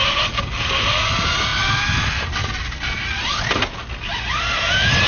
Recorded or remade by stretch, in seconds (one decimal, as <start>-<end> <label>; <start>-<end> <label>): 0.0-5.1 recorded